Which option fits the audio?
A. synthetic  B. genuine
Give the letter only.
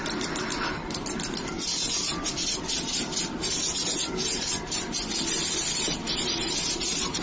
B